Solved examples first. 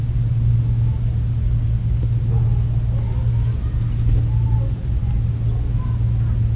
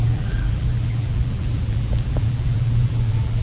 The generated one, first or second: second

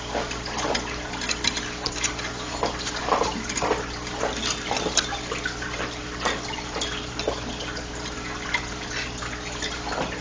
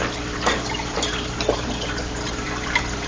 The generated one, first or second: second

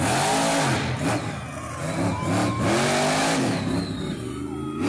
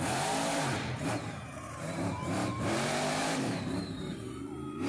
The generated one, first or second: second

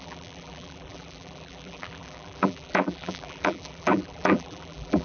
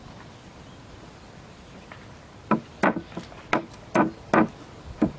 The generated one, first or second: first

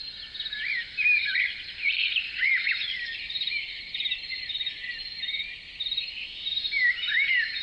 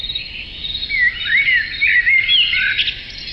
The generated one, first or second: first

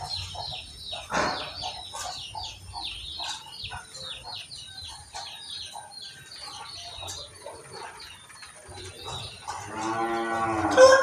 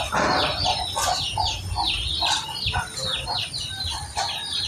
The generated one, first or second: second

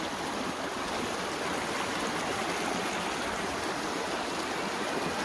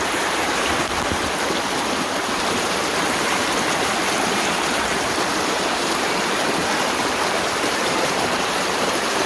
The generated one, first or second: second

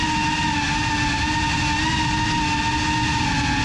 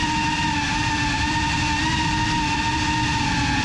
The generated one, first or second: second